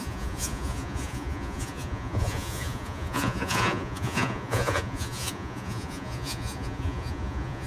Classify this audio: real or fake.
fake